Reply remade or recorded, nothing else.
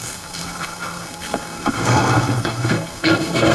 remade